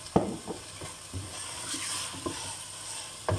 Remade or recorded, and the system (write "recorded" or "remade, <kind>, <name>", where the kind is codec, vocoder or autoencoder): recorded